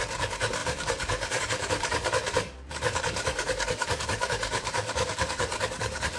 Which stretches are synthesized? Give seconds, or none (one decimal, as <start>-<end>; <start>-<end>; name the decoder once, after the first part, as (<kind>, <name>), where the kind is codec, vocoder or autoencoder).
0.0-6.2 (codec, DAC)